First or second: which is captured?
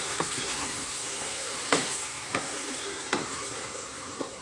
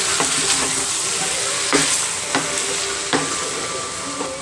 second